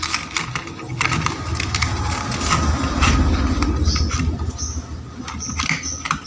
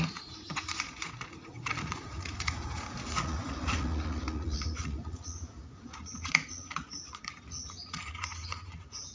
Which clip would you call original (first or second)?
first